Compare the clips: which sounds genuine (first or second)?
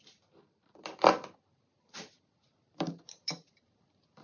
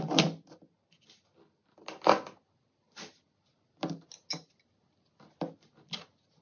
second